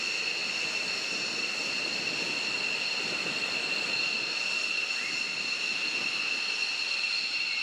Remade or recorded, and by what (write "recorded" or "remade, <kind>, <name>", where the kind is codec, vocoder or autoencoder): recorded